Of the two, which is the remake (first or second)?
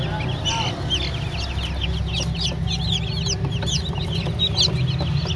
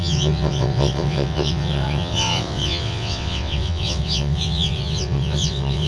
second